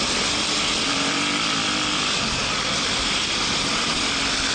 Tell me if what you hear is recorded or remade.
recorded